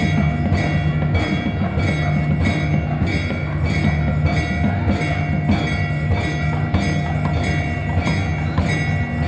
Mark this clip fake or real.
real